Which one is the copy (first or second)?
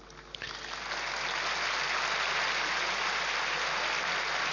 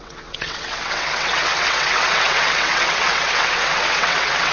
second